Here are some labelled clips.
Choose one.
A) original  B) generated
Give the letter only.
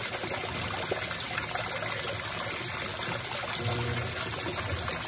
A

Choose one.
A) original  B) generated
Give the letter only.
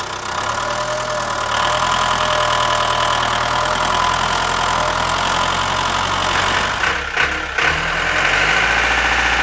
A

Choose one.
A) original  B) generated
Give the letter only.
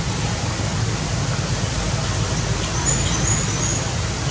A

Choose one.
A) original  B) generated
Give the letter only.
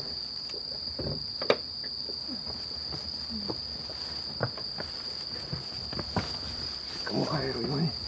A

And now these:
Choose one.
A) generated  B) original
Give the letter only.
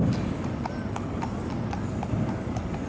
B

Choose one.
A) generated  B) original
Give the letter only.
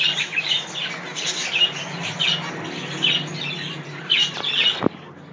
B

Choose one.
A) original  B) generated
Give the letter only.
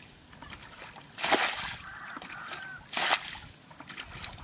A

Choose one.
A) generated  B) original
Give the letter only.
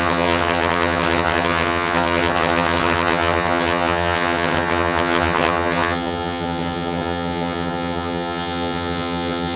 A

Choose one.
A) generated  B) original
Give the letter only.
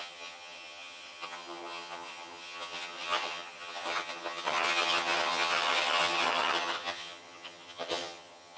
A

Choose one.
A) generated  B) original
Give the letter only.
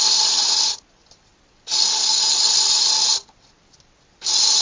B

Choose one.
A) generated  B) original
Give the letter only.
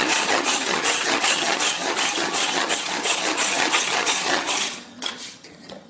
A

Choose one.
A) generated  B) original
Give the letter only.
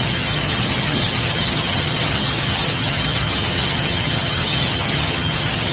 A